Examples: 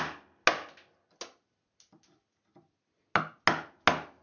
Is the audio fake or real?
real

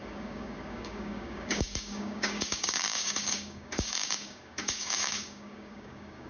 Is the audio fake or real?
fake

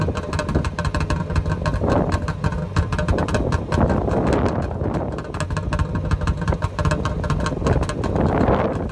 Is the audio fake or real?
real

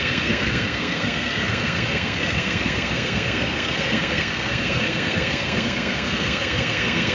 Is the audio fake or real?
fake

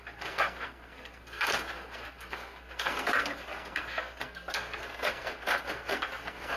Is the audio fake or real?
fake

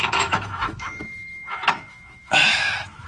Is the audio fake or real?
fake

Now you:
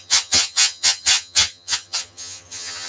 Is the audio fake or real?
fake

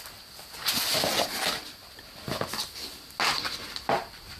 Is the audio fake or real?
real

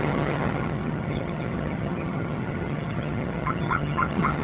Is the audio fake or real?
fake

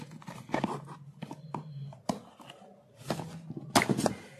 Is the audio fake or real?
real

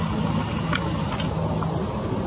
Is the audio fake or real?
real